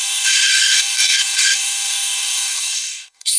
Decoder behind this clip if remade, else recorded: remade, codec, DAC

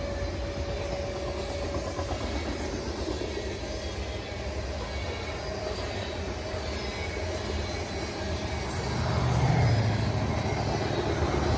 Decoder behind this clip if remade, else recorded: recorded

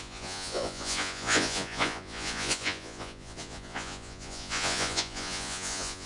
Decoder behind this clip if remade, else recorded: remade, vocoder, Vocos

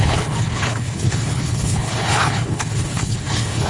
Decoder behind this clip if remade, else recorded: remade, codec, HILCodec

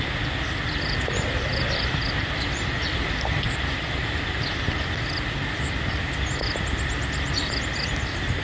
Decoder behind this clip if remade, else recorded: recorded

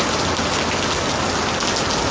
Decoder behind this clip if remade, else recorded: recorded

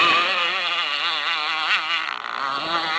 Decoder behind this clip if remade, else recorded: recorded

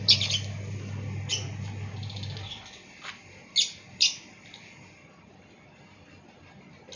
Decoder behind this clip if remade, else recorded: recorded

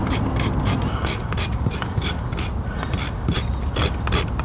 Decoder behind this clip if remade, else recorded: recorded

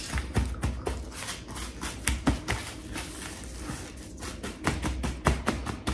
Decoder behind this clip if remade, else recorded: recorded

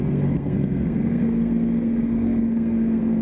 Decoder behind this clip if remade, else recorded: remade, codec, SNAC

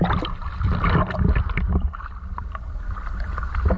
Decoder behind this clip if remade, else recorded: recorded